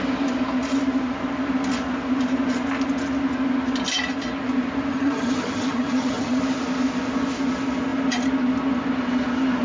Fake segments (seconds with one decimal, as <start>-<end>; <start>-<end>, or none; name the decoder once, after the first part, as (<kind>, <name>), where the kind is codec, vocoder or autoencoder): 4.9-6.4 (vocoder, HiFi-GAN)